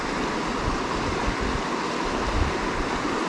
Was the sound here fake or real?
real